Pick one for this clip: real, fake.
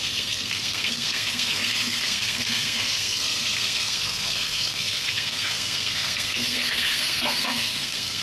fake